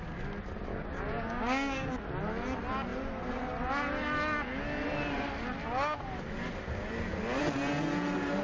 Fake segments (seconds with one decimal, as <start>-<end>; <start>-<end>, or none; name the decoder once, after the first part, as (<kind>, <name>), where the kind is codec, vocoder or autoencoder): 0.7-1.9 (codec, DAC)